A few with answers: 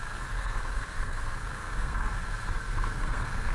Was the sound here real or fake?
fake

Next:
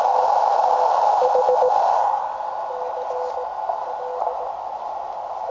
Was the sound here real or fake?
real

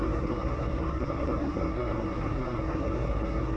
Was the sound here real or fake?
fake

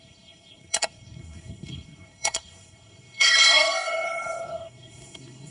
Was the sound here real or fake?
fake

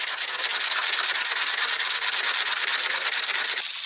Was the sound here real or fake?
real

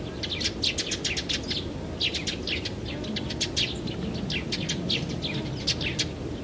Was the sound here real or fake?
real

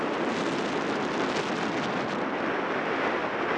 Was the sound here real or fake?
real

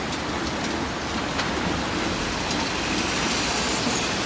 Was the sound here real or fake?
real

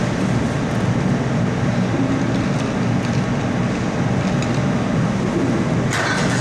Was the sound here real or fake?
real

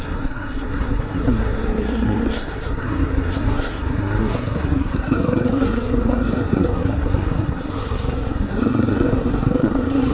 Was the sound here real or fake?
fake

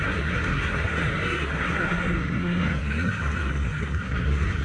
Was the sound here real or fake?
fake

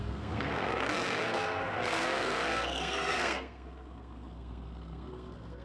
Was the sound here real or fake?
fake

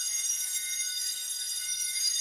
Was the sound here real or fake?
fake